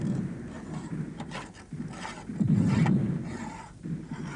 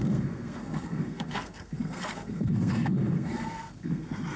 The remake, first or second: second